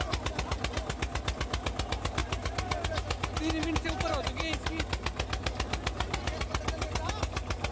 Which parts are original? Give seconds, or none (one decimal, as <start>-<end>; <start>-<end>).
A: 0.0-7.7